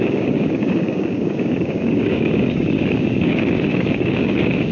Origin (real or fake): fake